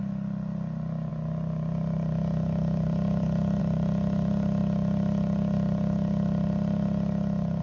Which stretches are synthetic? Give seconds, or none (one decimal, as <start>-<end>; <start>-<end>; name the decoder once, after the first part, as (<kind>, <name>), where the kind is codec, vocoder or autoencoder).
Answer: none